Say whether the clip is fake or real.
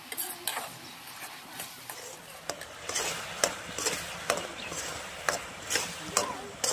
real